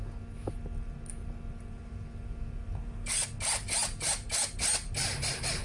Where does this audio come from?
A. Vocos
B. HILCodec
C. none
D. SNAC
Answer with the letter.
C